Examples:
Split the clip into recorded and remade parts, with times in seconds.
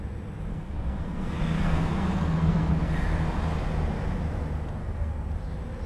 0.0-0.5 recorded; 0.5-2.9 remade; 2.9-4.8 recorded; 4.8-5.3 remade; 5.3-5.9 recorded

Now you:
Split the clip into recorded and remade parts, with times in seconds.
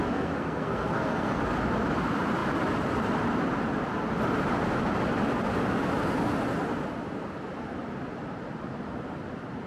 0.0-1.4 remade; 1.4-9.7 recorded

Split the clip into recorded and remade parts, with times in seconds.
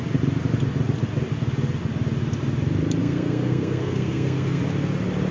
0.0-3.0 recorded; 3.0-4.6 remade; 4.6-5.3 recorded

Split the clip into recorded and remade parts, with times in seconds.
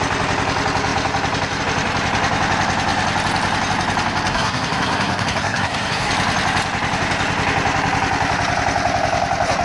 0.0-4.3 recorded; 4.3-6.1 remade; 6.1-9.6 recorded